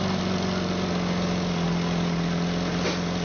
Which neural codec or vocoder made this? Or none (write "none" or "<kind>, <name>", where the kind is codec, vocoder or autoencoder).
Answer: none